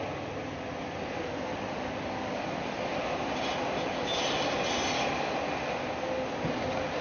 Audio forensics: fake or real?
real